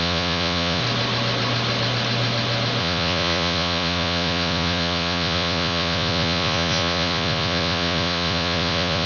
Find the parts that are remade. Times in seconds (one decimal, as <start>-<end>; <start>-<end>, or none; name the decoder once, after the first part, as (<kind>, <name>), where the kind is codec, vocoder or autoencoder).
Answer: 0.0-0.8 (vocoder, Vocos); 2.8-9.1